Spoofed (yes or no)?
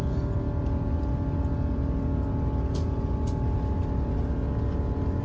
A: no